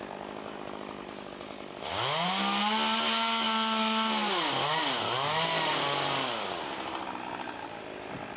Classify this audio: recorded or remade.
recorded